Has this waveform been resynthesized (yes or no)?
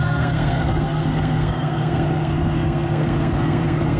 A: yes